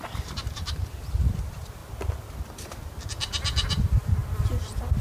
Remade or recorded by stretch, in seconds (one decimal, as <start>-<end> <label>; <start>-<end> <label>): 0.0-1.8 remade; 1.8-2.4 recorded; 2.4-4.2 remade; 4.2-5.0 recorded